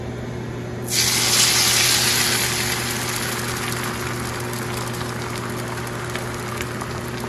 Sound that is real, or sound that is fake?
real